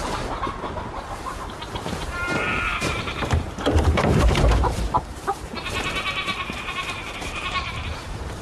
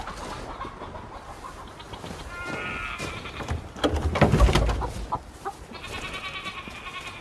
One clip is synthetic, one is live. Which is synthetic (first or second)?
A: first